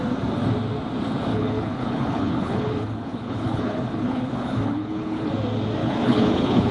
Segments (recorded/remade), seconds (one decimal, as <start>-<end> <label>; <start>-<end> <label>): 0.0-1.3 recorded; 1.3-5.3 remade; 5.3-5.8 recorded; 5.8-6.7 remade